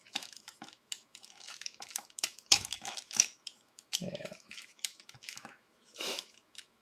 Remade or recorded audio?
remade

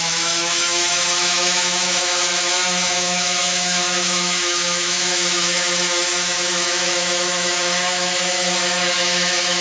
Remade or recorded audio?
remade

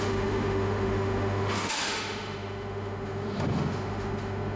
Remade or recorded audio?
remade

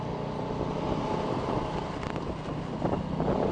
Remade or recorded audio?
recorded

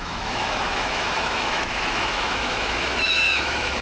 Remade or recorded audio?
remade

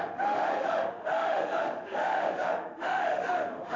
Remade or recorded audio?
remade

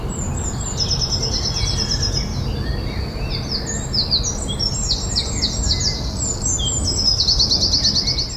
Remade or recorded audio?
recorded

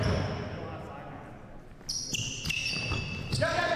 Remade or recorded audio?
recorded